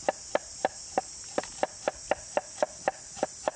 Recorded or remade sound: recorded